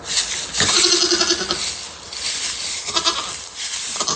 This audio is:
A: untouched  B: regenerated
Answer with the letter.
A